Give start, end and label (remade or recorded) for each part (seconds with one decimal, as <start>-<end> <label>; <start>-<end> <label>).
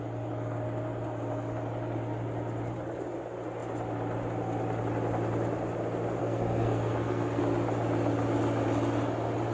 0.0-6.2 recorded; 6.2-7.4 remade; 7.4-9.5 recorded